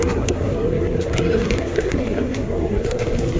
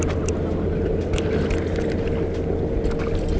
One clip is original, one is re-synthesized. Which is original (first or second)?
second